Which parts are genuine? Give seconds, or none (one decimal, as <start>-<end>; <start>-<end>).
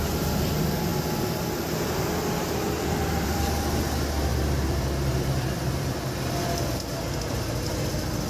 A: 0.0-0.9; 3.6-4.3; 5.9-8.3